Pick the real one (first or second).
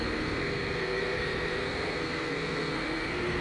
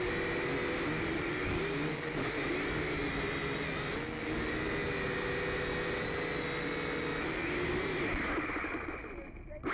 second